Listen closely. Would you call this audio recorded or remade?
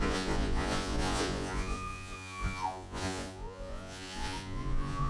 remade